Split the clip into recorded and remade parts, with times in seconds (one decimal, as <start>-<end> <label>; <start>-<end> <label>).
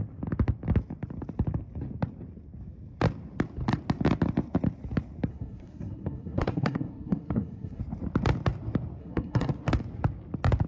0.0-5.3 recorded; 5.3-7.8 remade; 7.8-9.0 recorded; 9.0-9.7 remade; 9.7-10.7 recorded